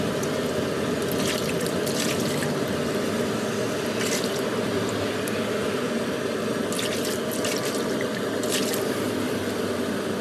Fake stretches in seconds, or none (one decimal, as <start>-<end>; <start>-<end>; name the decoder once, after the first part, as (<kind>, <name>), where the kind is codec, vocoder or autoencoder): none